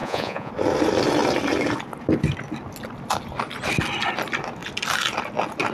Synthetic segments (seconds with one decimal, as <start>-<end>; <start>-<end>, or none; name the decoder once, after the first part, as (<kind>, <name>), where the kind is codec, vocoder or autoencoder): 0.0-0.5 (vocoder, Vocos)